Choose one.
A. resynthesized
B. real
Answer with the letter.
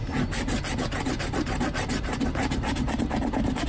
A